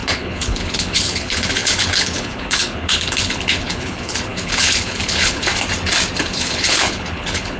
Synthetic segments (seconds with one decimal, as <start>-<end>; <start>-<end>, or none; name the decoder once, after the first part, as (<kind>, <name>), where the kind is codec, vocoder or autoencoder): 0.0-5.5 (codec, HILCodec); 6.2-7.6

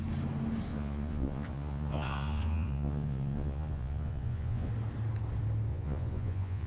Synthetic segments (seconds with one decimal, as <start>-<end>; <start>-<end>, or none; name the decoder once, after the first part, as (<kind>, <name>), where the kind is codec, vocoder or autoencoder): 0.7-4.7 (vocoder, Vocos); 5.7-6.7